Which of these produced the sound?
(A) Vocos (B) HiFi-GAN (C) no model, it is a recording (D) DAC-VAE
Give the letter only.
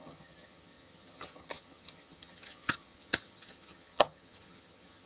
B